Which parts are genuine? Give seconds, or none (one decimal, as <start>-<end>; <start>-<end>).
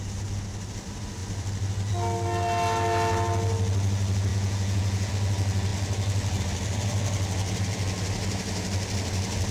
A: 0.0-4.3; 5.1-9.5